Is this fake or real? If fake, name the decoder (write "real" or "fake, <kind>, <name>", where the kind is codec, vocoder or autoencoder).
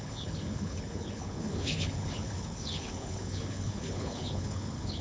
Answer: fake, codec, HILCodec